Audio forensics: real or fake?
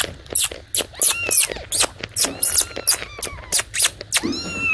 real